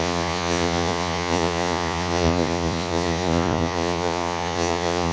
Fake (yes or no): yes